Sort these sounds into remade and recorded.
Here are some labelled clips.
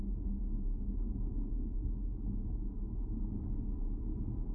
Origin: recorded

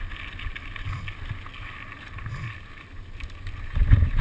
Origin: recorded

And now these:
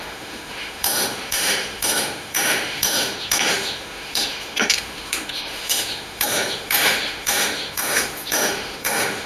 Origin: remade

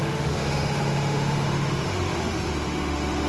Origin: remade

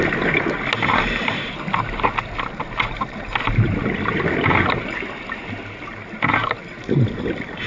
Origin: recorded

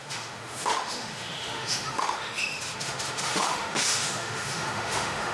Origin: remade